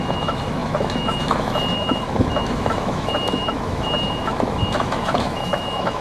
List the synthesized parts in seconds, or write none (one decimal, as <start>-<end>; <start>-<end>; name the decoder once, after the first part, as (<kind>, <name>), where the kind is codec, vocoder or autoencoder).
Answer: 0.0-6.0 (autoencoder, DAC-VAE)